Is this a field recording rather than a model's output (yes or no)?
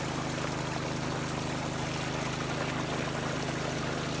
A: yes